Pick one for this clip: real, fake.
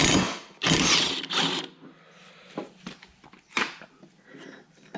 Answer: real